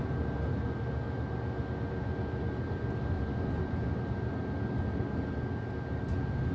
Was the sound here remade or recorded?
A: recorded